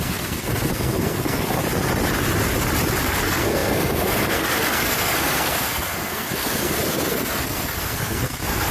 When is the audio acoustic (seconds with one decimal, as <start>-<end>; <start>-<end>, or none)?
1.6-3.0